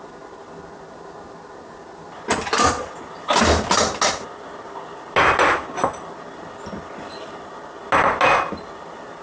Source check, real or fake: real